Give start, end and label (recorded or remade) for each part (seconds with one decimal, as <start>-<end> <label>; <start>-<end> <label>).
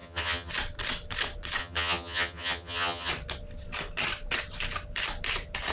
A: 0.0-0.5 remade; 0.5-1.6 recorded; 1.6-3.1 remade; 3.1-5.7 recorded